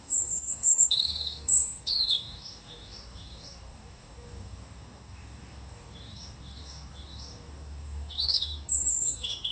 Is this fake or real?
fake